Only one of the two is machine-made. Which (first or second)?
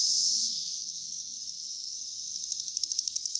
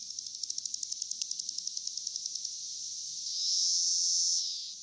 first